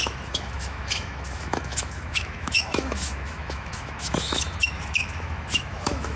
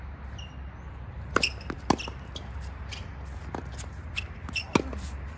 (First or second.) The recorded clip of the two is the second